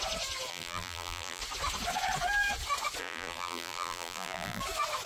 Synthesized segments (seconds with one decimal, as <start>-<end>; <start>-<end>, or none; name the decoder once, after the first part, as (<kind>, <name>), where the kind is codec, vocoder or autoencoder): 0.5-1.4 (vocoder, BigVGAN v2); 3.0-4.6